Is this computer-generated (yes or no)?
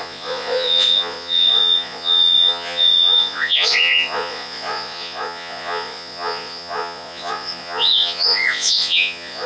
yes